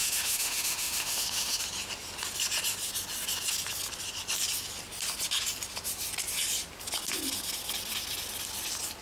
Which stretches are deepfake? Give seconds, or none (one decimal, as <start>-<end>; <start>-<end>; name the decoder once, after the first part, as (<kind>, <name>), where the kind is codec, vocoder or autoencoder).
0.0-1.6 (autoencoder, DAC-VAE)